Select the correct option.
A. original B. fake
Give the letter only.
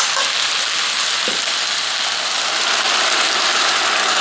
A